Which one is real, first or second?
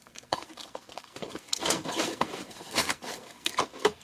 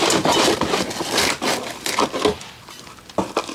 second